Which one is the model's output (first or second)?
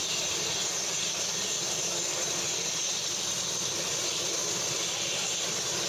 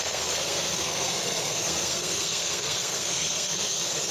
second